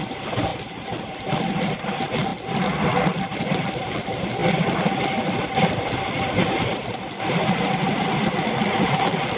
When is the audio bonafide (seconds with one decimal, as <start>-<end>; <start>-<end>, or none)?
2.3-3.7; 4.4-8.3